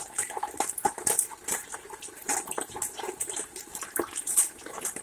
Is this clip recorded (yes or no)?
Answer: no